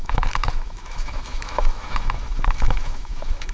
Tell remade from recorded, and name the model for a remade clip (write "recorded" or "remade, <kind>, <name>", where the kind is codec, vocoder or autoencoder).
remade, autoencoder, DAC-VAE